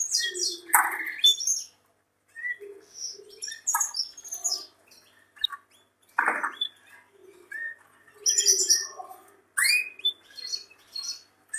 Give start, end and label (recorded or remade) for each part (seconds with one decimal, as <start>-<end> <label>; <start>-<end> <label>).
0.0-0.4 recorded; 0.4-1.0 remade; 1.0-11.6 recorded